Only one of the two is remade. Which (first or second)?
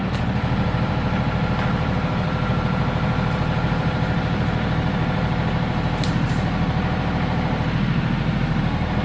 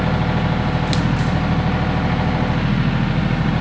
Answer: first